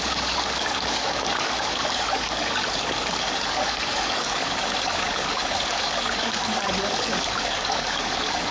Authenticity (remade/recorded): remade